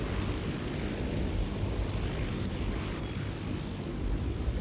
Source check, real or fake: real